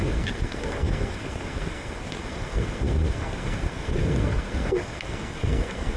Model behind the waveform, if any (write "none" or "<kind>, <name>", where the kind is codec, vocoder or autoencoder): codec, SNAC